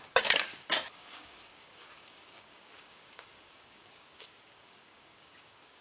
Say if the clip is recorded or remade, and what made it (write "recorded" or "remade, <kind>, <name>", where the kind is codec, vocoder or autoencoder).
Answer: remade, codec, DAC